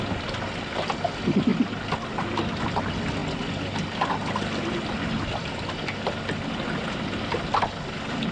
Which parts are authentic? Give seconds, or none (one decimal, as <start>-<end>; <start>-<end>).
0.0-8.3